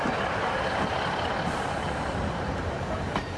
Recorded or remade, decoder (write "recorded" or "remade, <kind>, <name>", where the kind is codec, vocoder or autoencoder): remade, vocoder, BigVGAN v2